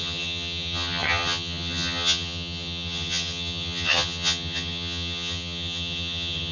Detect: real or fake fake